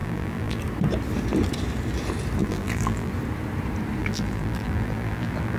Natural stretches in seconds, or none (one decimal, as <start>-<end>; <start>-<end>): 0.6-2.4; 3.1-4.0